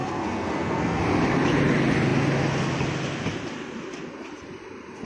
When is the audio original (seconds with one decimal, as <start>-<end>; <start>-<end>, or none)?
1.0-5.1